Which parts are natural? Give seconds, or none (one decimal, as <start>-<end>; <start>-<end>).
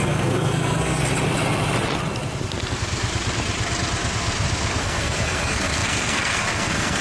1.0-4.8